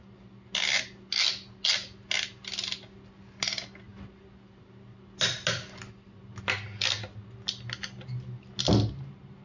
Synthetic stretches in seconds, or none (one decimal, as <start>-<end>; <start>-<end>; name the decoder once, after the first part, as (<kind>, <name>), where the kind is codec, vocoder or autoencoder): none